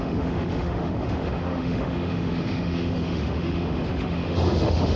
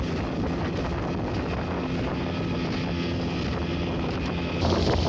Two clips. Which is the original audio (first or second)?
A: second